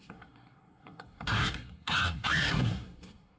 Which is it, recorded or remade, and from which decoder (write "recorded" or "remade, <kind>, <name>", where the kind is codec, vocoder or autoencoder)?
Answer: remade, codec, SNAC